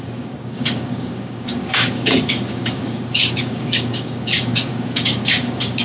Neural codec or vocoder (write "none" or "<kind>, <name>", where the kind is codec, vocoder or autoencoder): codec, DAC